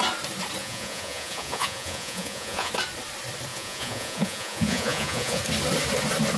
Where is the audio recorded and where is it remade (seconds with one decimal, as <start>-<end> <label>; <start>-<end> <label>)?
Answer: 0.0-0.6 recorded; 0.6-2.7 remade; 2.7-3.5 recorded; 3.5-5.4 remade; 5.4-6.4 recorded